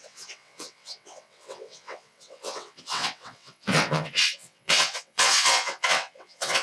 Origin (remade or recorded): remade